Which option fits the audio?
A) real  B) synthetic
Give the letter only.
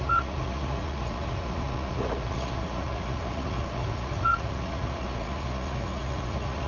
B